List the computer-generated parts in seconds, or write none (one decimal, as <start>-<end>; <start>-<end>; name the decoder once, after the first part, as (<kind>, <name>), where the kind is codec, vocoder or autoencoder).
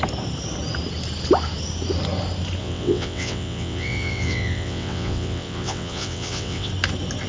2.6-6.7 (vocoder, WaveNeXt)